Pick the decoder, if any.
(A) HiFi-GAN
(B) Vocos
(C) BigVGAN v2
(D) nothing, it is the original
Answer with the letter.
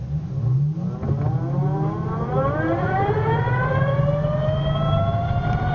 D